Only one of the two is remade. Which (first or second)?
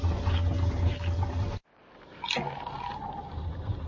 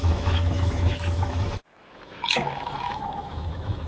second